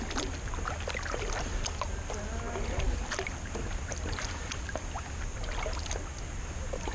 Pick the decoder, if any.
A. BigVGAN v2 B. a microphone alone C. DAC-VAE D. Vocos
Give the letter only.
B